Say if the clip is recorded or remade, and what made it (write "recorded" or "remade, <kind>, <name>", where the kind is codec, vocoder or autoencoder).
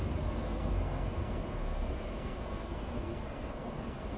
remade, codec, SNAC